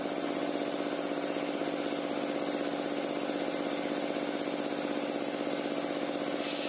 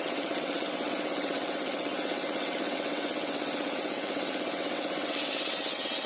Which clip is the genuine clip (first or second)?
first